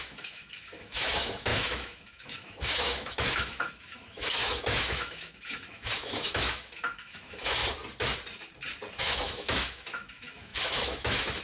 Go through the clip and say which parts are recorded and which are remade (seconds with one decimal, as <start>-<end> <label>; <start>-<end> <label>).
0.0-7.6 remade; 7.6-9.0 recorded; 9.0-11.4 remade